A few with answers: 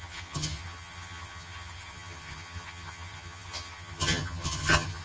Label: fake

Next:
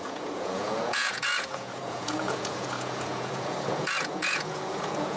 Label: fake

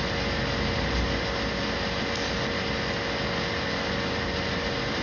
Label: fake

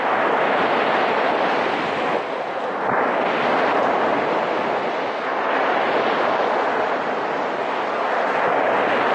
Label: real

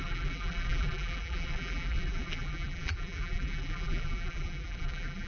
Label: fake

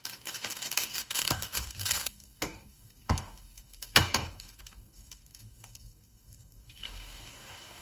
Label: fake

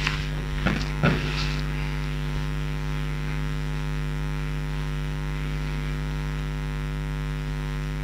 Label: real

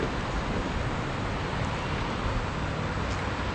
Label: real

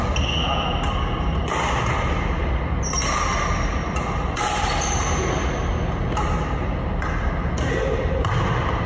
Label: real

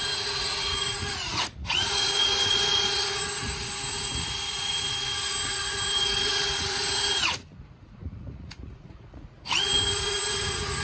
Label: fake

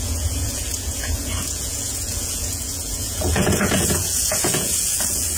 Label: fake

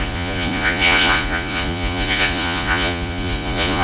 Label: fake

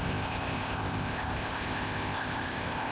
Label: fake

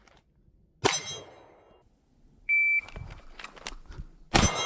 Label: real